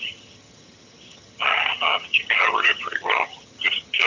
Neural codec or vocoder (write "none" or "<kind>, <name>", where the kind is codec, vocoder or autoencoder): vocoder, HiFi-GAN